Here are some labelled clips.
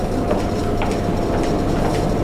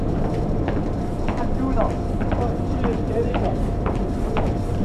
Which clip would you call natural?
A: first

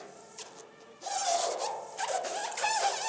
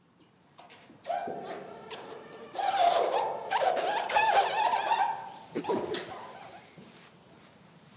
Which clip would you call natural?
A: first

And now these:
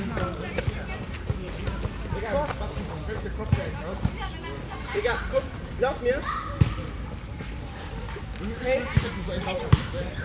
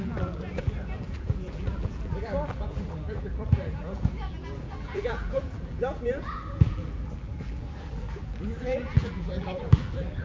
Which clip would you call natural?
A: first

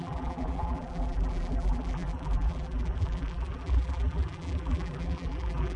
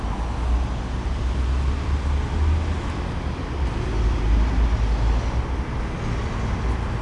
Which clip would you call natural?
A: second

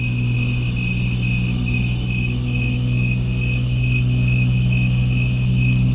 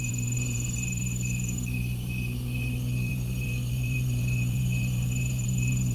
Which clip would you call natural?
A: first